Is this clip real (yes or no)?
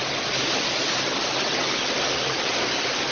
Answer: yes